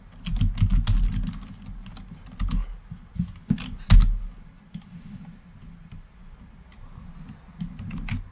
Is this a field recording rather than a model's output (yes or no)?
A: yes